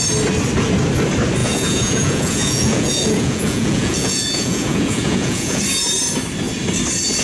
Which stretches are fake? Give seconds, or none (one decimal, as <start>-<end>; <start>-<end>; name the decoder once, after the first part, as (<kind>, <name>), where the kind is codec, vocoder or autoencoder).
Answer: 1.4-5.6 (vocoder, Vocos)